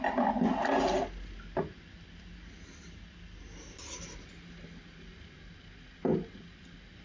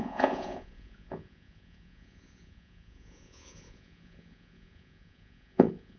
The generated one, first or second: second